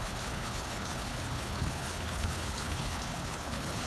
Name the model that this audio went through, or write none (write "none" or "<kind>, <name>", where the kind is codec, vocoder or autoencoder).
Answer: codec, HILCodec